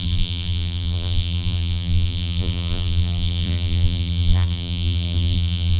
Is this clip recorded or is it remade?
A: remade